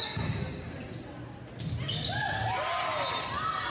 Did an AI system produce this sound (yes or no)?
no